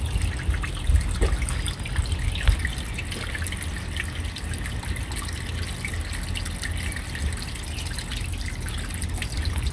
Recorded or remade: recorded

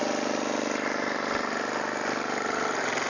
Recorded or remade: recorded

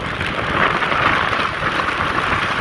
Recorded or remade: recorded